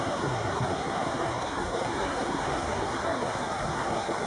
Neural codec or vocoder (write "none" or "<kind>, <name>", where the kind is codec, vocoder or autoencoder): codec, SNAC